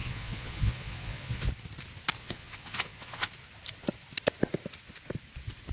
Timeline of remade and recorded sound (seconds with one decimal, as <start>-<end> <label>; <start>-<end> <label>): 0.0-1.5 remade; 1.5-2.2 recorded; 2.2-3.3 remade; 3.3-5.7 recorded